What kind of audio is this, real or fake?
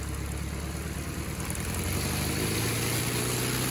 real